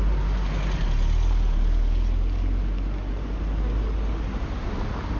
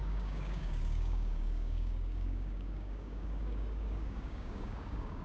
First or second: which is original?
first